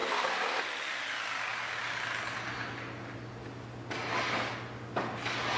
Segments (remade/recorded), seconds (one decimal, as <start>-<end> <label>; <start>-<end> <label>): 0.0-5.6 recorded

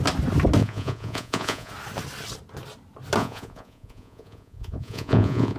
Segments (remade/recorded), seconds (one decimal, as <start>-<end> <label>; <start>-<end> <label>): 0.0-0.6 recorded; 0.6-1.7 remade; 1.7-3.2 recorded; 3.2-5.6 remade